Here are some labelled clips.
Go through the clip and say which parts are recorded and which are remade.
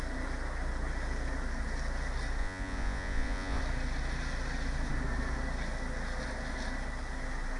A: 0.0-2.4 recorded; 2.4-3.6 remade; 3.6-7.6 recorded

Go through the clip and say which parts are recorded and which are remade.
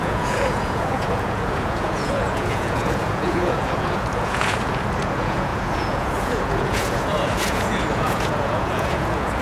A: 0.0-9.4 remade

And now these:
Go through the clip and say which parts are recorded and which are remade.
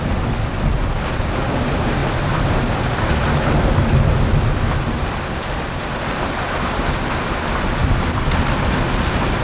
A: 0.0-9.4 recorded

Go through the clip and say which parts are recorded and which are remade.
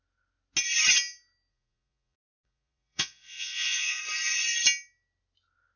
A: 0.0-1.5 recorded; 1.5-4.0 remade; 4.0-5.8 recorded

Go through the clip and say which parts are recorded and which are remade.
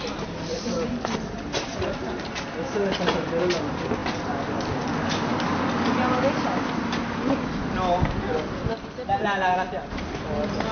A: 0.0-10.7 recorded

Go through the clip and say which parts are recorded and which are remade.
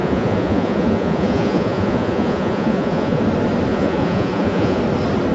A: 0.0-3.2 remade; 3.2-3.7 recorded; 3.7-4.8 remade; 4.8-5.3 recorded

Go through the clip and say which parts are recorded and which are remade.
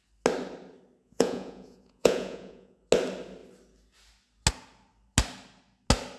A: 0.0-1.0 recorded; 1.0-2.8 remade; 2.8-6.2 recorded